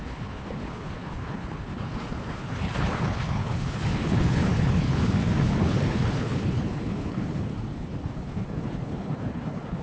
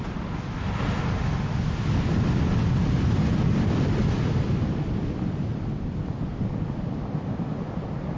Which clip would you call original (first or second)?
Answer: second